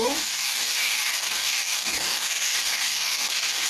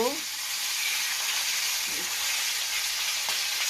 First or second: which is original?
second